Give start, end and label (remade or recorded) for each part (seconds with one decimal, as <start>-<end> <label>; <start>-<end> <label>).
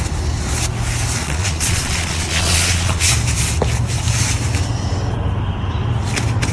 0.0-1.2 recorded; 1.2-3.1 remade; 3.1-6.5 recorded